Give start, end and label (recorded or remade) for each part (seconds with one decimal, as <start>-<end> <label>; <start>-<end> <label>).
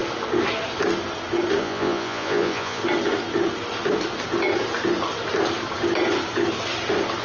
0.0-1.6 recorded; 1.6-2.8 remade; 2.8-7.2 recorded